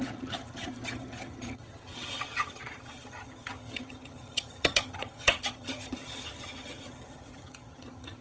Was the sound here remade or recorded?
remade